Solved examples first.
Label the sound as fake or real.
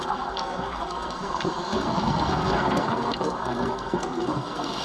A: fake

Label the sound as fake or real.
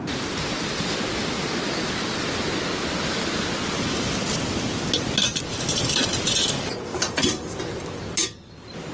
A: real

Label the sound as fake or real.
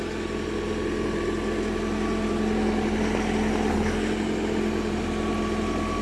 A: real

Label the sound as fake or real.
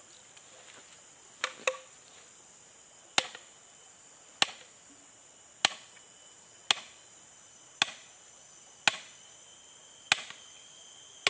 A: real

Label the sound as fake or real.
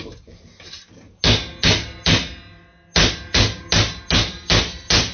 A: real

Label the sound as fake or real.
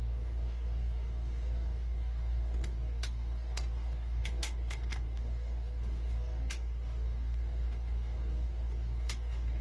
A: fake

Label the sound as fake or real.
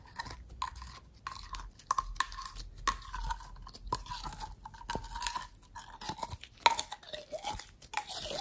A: real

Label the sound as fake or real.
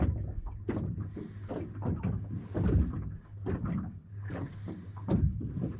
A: real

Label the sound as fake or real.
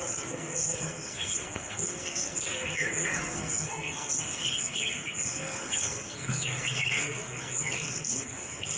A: fake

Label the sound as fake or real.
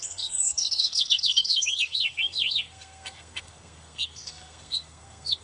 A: fake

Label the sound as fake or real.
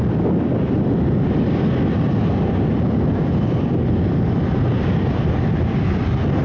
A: real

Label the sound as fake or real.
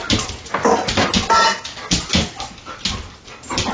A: real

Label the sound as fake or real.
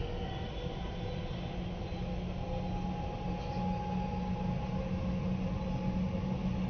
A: real